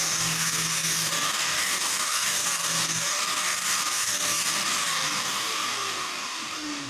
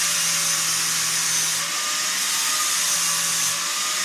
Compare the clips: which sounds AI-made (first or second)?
first